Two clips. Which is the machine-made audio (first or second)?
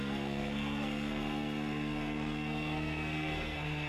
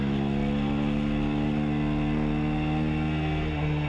first